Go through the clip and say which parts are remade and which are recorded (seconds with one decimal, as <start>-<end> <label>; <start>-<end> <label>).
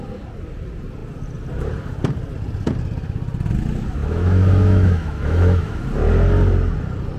0.0-4.0 recorded; 4.0-5.8 remade; 5.8-7.2 recorded